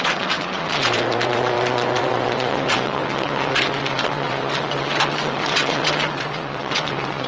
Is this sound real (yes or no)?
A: no